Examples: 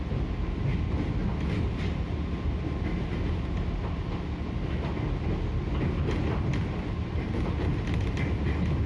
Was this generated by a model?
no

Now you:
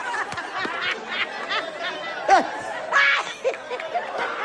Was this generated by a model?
no